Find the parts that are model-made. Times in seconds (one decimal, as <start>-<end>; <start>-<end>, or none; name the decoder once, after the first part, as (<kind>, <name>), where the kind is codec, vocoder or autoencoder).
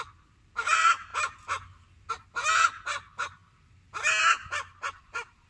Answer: none